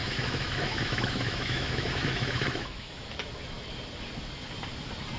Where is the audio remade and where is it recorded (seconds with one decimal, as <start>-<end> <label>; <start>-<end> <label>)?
0.0-3.1 remade; 3.1-5.2 recorded